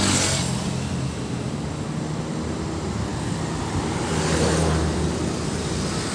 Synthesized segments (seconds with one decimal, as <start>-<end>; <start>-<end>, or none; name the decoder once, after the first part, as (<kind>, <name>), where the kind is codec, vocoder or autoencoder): none